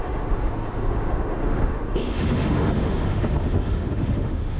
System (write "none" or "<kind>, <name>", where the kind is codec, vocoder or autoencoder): autoencoder, DAC-VAE